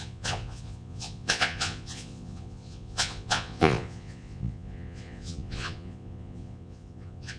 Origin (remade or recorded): remade